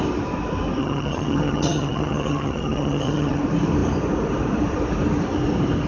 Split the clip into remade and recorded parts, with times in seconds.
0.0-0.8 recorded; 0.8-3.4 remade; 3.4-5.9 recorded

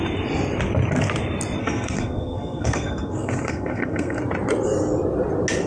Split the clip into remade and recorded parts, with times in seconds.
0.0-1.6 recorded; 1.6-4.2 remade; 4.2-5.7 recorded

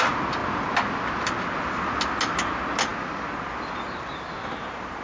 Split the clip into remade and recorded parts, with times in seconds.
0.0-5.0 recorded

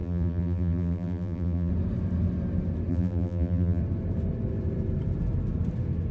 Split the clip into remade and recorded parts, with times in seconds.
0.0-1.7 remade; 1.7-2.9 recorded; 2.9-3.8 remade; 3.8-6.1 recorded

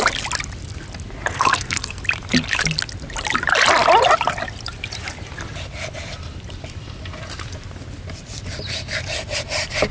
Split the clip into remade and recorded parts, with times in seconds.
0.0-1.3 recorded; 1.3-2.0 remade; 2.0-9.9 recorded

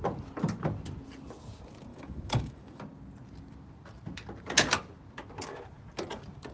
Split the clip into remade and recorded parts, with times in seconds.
0.0-1.9 recorded; 1.9-2.8 remade; 2.8-6.5 recorded